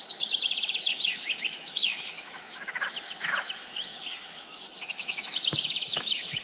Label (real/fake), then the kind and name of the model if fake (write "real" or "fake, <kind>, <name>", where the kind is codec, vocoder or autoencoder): fake, autoencoder, DAC-VAE